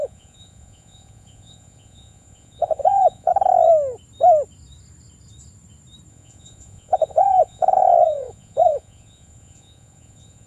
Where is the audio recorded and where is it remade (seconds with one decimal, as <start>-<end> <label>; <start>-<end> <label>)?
0.0-3.3 remade; 3.3-6.1 recorded; 6.1-10.5 remade

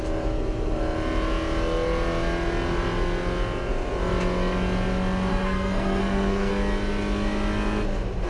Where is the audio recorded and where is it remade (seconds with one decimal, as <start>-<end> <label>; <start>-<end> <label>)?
0.0-5.3 recorded; 5.3-6.5 remade; 6.5-8.3 recorded

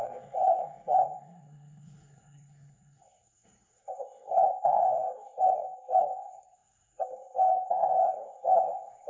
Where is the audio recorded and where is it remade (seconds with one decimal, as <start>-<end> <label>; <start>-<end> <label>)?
0.0-9.1 remade

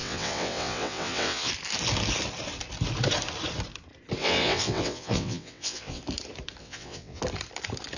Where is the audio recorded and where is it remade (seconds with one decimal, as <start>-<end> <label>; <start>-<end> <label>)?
0.0-1.5 remade; 1.5-4.2 recorded; 4.2-6.0 remade; 6.0-6.6 recorded; 6.6-7.2 remade; 7.2-8.0 recorded

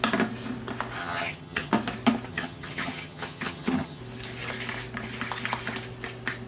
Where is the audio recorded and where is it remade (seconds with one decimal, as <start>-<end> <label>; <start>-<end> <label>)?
0.0-1.0 recorded; 1.0-1.7 remade; 1.7-2.3 recorded; 2.3-4.0 remade; 4.0-6.5 recorded

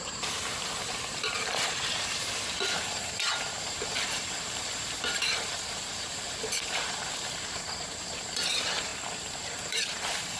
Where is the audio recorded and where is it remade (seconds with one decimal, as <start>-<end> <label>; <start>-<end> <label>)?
0.0-8.9 remade; 8.9-9.4 recorded; 9.4-10.4 remade

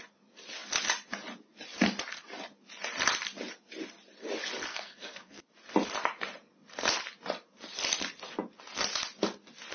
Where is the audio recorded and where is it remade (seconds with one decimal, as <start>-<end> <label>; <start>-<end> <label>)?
0.0-4.7 recorded; 4.7-5.4 remade; 5.4-9.7 recorded